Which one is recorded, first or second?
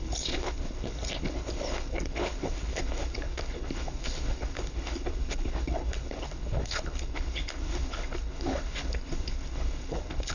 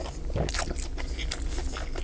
second